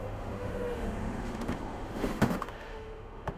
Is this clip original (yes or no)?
no